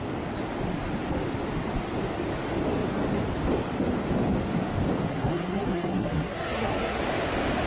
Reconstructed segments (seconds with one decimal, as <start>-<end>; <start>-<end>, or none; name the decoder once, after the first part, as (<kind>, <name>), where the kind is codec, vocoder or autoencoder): 5.1-7.0 (codec, SNAC)